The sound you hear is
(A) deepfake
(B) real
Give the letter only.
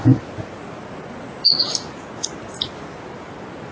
B